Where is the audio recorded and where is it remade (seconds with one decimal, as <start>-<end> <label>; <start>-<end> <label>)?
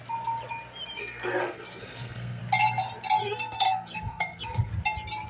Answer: 0.0-1.0 recorded; 1.0-2.4 remade; 2.4-3.2 recorded; 3.2-4.7 remade; 4.7-5.3 recorded